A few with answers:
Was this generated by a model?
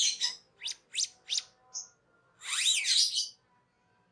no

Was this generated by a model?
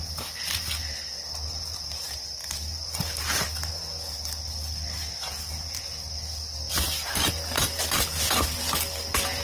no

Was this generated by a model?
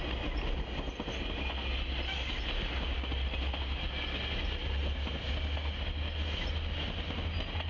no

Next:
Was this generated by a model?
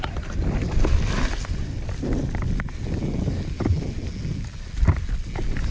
no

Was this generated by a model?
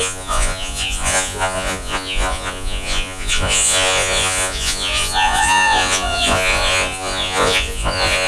yes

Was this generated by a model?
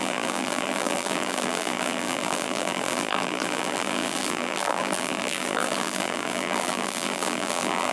yes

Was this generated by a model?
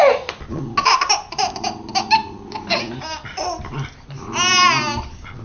no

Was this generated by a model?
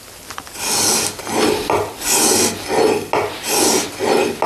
no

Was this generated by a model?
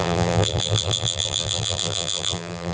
yes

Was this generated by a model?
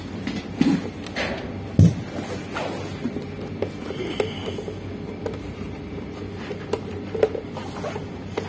no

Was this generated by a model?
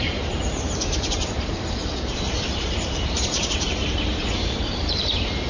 yes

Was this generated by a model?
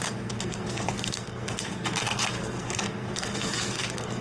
yes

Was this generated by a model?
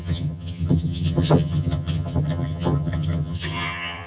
yes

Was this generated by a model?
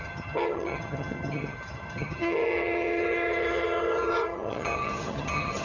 yes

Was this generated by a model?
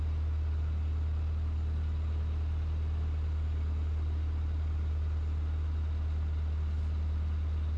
no